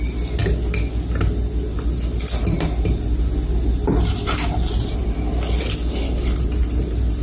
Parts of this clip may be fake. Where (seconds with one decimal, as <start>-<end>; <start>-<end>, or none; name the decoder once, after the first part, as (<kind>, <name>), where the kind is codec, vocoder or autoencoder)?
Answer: none